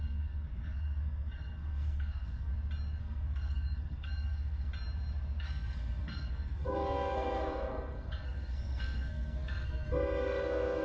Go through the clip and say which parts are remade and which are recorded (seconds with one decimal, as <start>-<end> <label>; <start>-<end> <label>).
0.0-2.5 remade; 2.5-3.0 recorded; 3.0-4.7 remade; 4.7-5.4 recorded; 5.4-10.8 remade